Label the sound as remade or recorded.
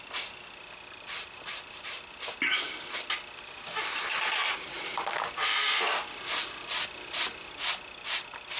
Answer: recorded